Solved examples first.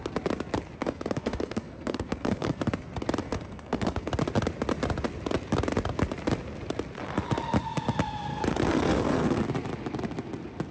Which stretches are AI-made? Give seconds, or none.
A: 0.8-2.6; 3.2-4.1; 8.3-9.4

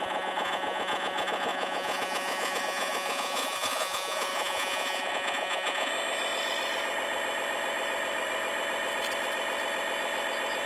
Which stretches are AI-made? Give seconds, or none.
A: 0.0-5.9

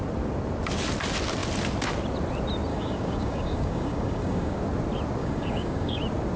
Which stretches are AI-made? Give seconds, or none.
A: 2.7-4.6; 5.2-6.0

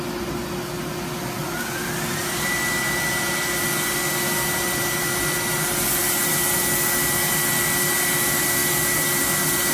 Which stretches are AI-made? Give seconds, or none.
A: none

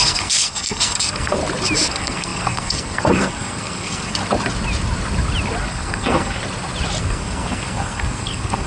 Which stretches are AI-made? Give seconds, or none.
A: 0.0-1.4; 1.9-4.2; 5.6-6.4; 7.0-8.7

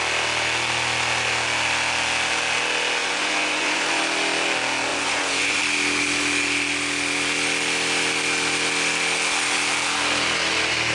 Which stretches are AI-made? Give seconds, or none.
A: 3.0-4.0; 4.9-5.6

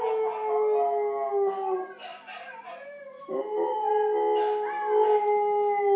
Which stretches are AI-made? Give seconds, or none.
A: none

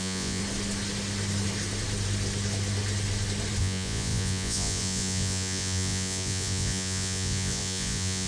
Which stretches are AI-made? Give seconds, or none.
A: 0.0-0.4; 3.6-8.3